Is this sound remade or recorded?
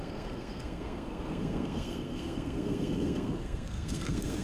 remade